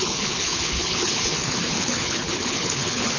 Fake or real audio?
fake